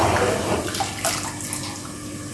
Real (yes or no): yes